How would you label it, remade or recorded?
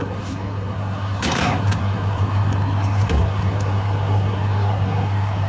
remade